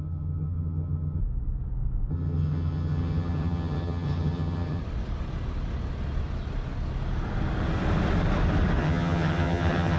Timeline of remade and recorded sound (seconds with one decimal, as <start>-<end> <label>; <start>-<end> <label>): 0.0-1.2 remade; 1.2-2.1 recorded; 2.1-4.8 remade; 4.8-8.8 recorded; 8.8-10.0 remade